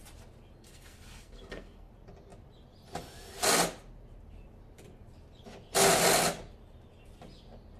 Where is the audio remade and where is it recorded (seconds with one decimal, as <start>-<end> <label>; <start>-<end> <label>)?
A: 0.0-0.6 recorded; 0.6-1.9 remade; 1.9-7.8 recorded